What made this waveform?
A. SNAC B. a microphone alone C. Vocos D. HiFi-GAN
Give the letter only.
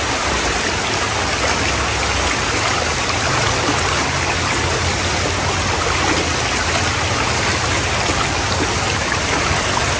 B